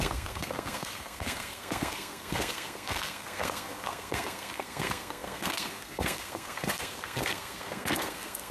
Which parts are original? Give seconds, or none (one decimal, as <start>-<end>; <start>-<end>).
none